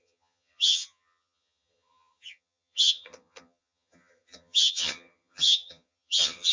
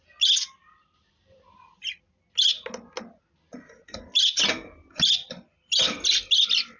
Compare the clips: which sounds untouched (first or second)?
second